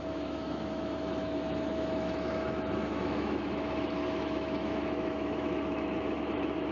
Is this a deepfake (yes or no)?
yes